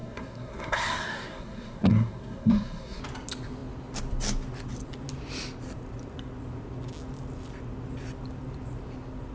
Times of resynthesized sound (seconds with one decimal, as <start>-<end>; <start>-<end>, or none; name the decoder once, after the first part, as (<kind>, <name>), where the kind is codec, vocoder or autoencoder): 0.0-3.0 (codec, SNAC)